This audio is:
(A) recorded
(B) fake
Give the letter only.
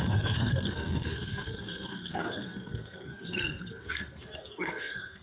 B